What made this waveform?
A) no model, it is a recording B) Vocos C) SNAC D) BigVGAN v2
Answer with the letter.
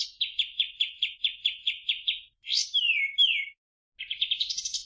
A